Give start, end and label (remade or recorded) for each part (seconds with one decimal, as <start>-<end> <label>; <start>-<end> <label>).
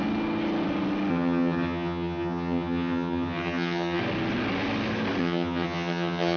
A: 0.0-1.1 recorded; 1.1-4.0 remade; 4.0-5.2 recorded; 5.2-6.4 remade